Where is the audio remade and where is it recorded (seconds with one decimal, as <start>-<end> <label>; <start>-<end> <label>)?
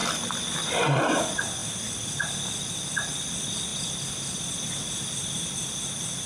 0.0-1.0 remade; 1.0-1.6 recorded; 1.6-3.1 remade; 3.1-3.7 recorded; 3.7-5.8 remade; 5.8-6.3 recorded